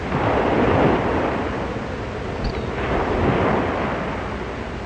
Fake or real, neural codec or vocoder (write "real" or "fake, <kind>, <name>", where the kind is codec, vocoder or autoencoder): real